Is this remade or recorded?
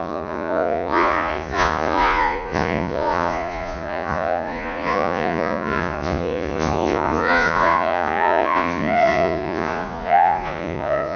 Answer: remade